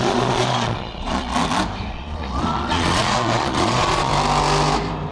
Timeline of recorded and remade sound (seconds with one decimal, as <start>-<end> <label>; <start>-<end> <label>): 0.0-1.3 remade; 1.3-1.9 recorded; 1.9-4.1 remade; 4.1-5.1 recorded